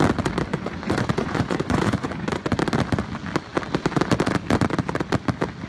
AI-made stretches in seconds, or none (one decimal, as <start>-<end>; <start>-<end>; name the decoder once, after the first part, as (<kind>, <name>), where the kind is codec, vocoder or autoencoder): 0.5-2.5 (vocoder, Vocos)